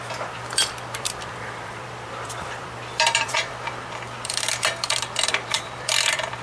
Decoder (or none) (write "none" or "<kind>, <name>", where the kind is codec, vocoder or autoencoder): vocoder, BigVGAN v2